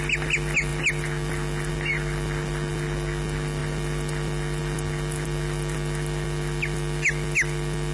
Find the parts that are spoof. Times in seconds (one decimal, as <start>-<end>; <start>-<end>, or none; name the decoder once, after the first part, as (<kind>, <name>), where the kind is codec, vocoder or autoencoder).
none